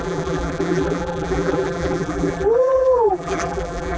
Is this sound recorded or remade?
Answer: remade